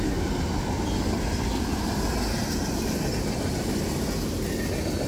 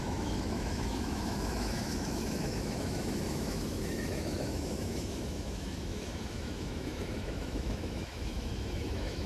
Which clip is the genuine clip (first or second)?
first